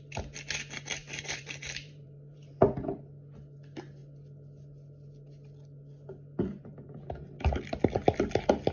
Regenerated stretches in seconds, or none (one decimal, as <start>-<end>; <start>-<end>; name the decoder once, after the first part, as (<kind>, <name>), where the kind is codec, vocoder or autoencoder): 1.0-2.5 (vocoder, BigVGAN v2)